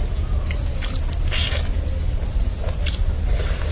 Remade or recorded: recorded